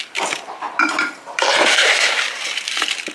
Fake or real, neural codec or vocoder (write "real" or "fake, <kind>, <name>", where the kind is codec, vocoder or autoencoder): fake, vocoder, BigVGAN v2